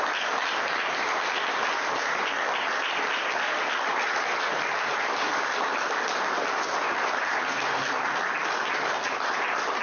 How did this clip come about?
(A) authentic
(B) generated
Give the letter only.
A